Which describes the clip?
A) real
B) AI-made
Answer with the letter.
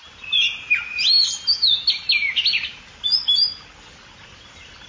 A